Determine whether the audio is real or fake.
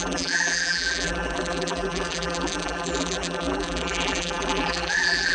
fake